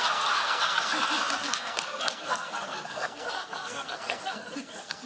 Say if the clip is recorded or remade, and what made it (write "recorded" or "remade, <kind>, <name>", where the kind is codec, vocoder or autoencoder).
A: remade, codec, SNAC